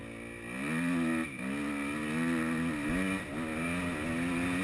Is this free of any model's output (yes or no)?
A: yes